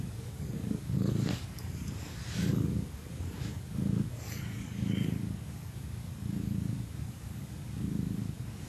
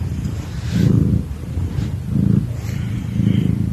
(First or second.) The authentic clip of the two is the second